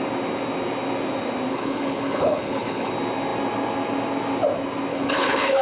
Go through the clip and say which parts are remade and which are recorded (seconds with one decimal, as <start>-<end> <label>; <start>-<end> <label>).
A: 0.0-1.5 recorded; 1.5-2.9 remade; 2.9-4.9 recorded; 4.9-5.6 remade